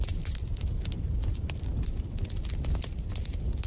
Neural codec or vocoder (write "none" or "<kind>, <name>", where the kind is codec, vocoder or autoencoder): none